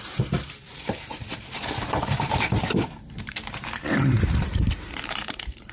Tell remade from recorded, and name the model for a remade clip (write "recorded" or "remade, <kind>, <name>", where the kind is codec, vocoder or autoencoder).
remade, vocoder, BigVGAN v2